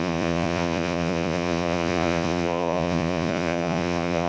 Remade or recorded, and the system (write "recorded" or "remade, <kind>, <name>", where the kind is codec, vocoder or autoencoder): remade, vocoder, Vocos